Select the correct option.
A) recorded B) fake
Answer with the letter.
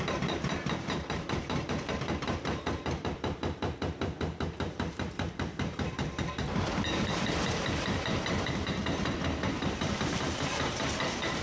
B